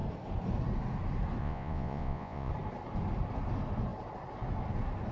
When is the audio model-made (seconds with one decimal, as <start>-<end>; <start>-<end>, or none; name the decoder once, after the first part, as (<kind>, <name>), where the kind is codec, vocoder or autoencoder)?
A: 1.4-2.5 (vocoder, Vocos)